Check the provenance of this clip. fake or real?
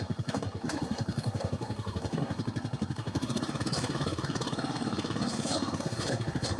fake